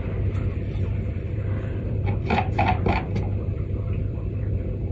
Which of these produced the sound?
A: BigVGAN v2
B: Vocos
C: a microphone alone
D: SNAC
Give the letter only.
A